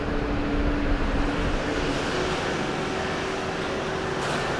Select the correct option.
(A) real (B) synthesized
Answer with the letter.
A